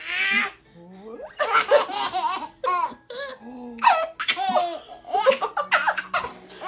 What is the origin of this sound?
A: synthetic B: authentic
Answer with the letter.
B